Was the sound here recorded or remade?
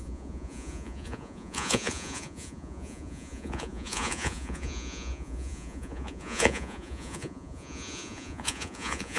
remade